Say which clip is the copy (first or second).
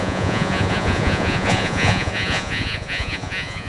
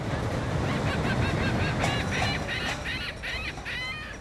first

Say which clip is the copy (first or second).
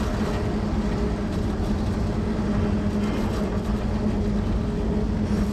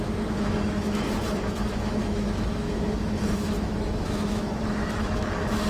second